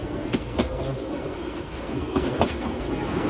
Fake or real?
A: fake